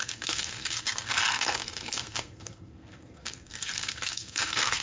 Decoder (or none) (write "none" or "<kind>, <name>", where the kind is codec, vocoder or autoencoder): codec, SNAC